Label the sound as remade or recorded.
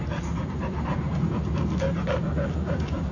recorded